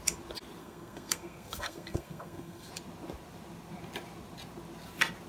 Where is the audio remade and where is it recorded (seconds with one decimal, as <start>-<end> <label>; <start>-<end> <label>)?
0.0-0.6 recorded; 0.6-2.7 remade; 2.7-5.3 recorded